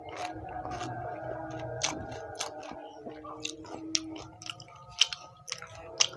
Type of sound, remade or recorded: recorded